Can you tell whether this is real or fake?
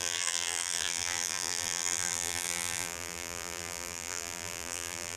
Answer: fake